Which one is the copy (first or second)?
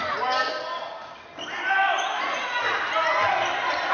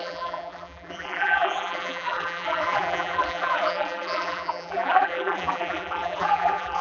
second